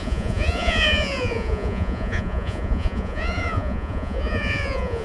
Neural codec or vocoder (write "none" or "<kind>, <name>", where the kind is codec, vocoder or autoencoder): vocoder, Vocos